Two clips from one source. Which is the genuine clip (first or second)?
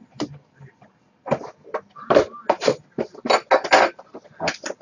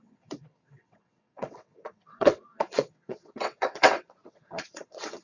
first